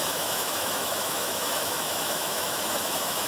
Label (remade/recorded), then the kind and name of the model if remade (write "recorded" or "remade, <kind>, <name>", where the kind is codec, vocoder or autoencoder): remade, autoencoder, DAC-VAE